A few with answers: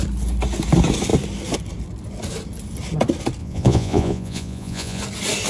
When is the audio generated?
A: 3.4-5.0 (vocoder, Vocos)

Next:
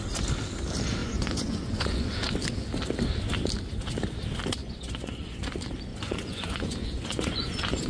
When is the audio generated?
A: 1.0-2.1 (vocoder, Vocos); 4.6-5.4; 5.9-7.9

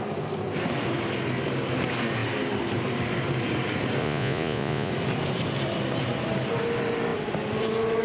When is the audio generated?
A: 4.0-4.9 (vocoder, Vocos)

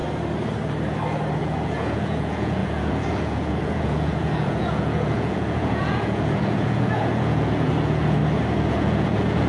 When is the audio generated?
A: 1.4-8.2 (vocoder, Vocos); 8.7-9.5

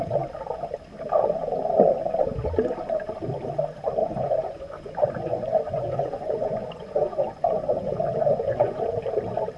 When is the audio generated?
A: 4.0-8.8 (vocoder, Vocos)

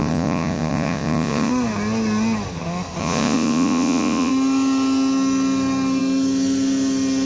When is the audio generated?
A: 0.0-1.5 (vocoder, Vocos); 3.0-4.3

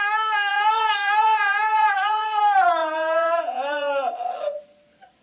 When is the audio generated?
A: 0.5-2.4 (vocoder, Vocos); 2.8-4.1

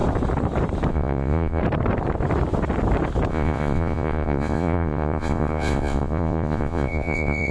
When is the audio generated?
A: 0.9-1.6 (vocoder, Vocos); 3.3-7.5